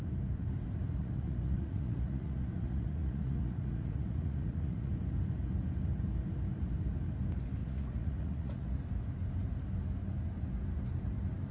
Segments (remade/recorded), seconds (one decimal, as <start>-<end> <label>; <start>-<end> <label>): 0.0-1.0 recorded; 1.0-4.9 remade; 4.9-7.6 recorded; 7.6-8.7 remade; 8.7-11.5 recorded